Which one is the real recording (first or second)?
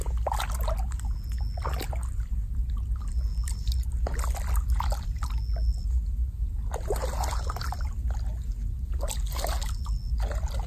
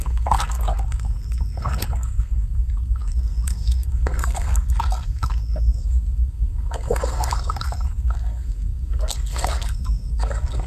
first